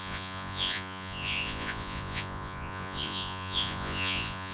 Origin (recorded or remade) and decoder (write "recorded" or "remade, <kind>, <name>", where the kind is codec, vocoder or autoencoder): remade, vocoder, Vocos